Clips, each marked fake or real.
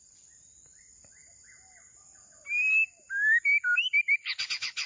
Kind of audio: real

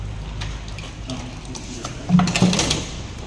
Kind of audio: real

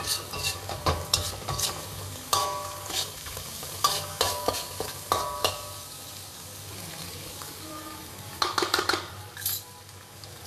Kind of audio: fake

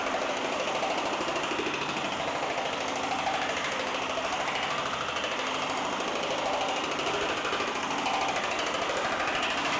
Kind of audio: real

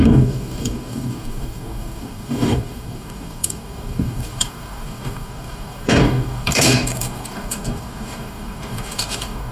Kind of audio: fake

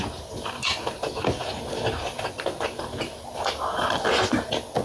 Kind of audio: real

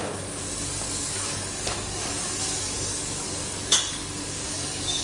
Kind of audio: fake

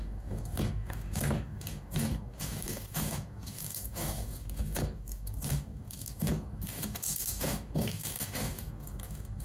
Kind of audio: fake